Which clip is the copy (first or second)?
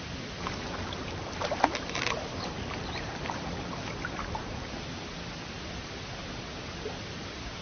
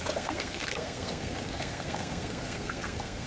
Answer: second